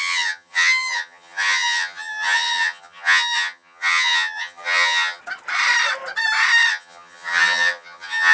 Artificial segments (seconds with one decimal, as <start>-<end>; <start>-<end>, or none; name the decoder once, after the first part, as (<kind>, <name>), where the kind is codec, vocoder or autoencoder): 0.0-5.2 (vocoder, HiFi-GAN); 6.7-8.3